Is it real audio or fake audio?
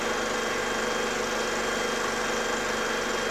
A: real